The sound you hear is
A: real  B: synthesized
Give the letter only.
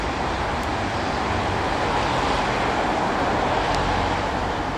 A